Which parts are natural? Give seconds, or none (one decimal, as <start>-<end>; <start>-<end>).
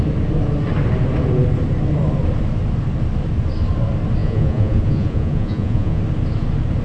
0.0-4.2; 6.0-6.8